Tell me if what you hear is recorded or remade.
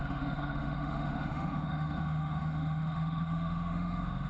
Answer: remade